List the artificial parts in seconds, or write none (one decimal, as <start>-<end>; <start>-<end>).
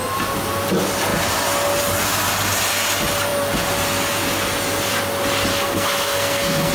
5.5-6.7